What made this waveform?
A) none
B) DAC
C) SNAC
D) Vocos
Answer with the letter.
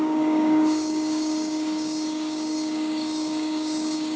B